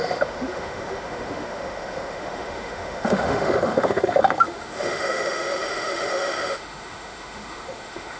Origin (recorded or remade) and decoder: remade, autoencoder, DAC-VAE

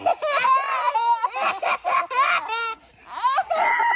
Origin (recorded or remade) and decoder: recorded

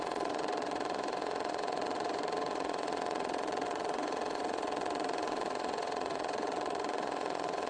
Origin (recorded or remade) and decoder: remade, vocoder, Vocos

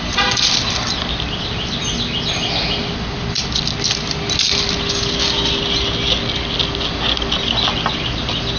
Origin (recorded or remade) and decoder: recorded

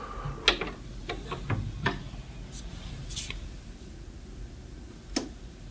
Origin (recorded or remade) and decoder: recorded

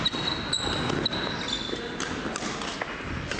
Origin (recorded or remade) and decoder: recorded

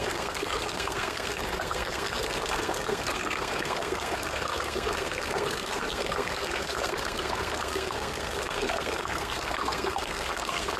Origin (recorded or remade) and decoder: remade, codec, SNAC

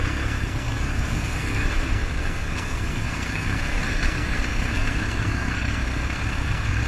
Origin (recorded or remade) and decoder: remade, codec, SNAC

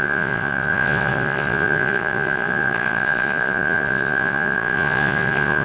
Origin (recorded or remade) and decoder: remade, vocoder, Vocos